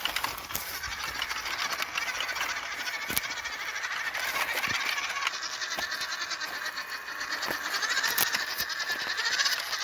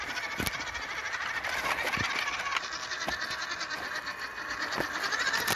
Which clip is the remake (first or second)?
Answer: second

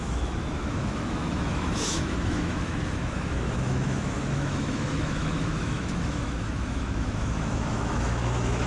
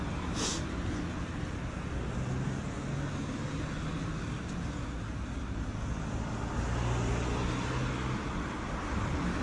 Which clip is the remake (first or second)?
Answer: first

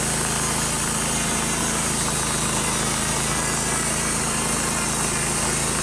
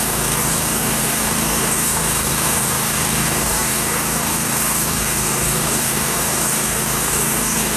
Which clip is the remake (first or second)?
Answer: second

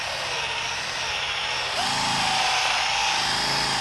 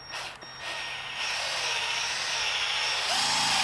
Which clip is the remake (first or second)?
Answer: first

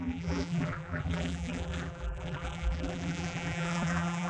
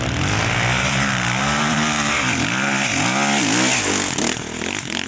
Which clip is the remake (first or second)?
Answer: first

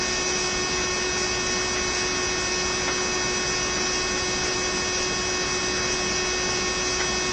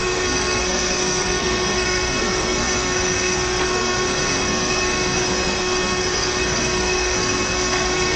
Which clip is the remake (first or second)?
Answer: second